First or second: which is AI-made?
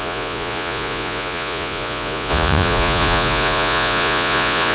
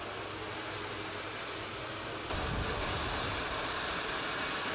first